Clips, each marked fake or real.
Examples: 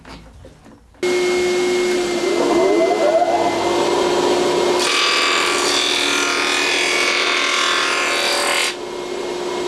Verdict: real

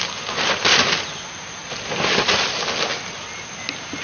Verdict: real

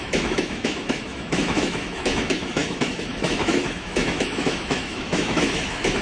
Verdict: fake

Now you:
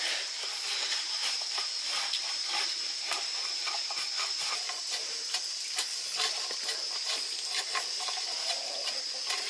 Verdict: real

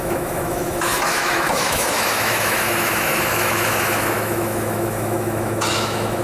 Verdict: fake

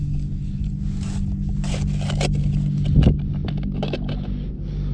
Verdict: real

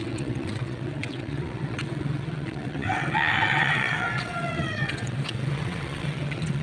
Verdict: fake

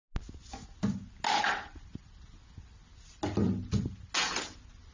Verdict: real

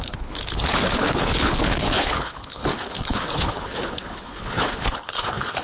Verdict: fake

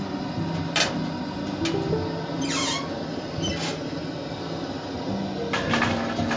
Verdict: real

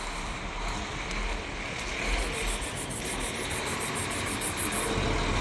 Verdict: real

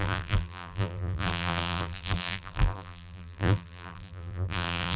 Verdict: fake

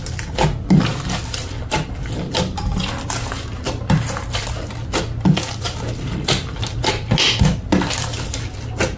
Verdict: real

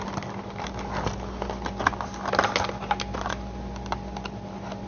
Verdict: real